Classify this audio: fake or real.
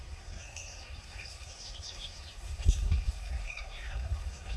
fake